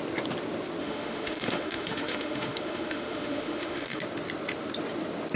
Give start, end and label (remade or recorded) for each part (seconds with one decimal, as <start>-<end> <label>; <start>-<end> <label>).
0.0-0.8 recorded; 0.8-4.0 remade; 4.0-5.4 recorded

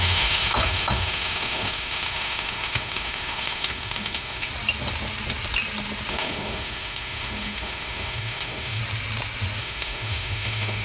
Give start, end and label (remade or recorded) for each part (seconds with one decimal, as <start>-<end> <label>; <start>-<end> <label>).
0.0-4.5 remade; 4.5-6.1 recorded; 6.1-8.8 remade; 8.8-9.6 recorded; 9.6-10.8 remade

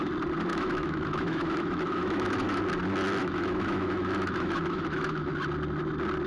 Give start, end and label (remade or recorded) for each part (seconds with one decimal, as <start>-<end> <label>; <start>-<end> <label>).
0.0-0.5 recorded; 0.5-2.6 remade; 2.6-3.2 recorded; 3.2-5.3 remade; 5.3-6.3 recorded

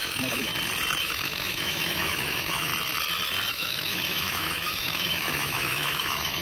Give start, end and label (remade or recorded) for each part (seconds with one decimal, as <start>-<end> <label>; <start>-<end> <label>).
0.0-0.5 remade; 0.5-1.0 recorded; 1.0-2.7 remade; 2.7-3.5 recorded; 3.5-6.4 remade

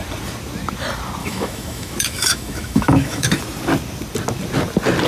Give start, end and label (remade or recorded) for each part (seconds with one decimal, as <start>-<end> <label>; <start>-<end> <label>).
0.0-1.2 recorded; 1.2-3.4 remade; 3.4-5.1 recorded

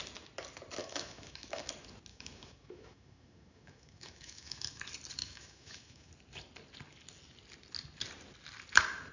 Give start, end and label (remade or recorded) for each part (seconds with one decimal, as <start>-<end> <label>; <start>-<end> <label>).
0.0-0.8 recorded; 0.8-1.7 remade; 1.7-2.1 recorded; 2.1-4.8 remade; 4.8-5.2 recorded; 5.2-6.1 remade; 6.1-9.1 recorded

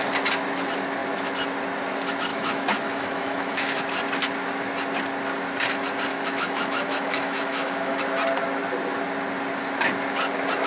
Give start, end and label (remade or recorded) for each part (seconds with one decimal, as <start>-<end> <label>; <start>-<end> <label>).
0.0-2.3 recorded; 2.3-3.8 remade; 3.8-6.1 recorded; 6.1-8.0 remade; 8.0-10.7 recorded

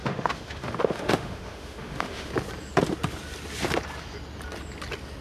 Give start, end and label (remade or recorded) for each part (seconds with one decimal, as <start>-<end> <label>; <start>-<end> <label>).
0.0-2.3 remade; 2.3-5.2 recorded